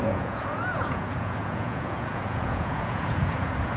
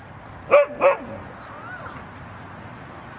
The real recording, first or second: second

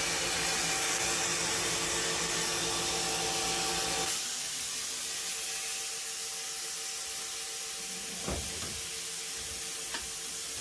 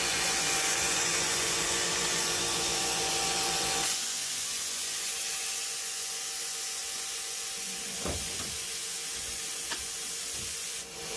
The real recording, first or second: first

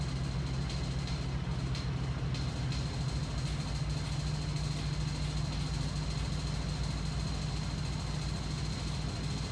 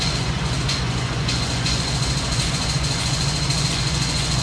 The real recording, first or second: first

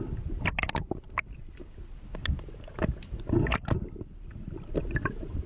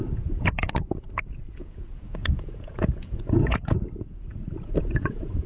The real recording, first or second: first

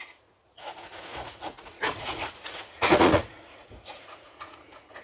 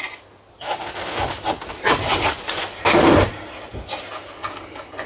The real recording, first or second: second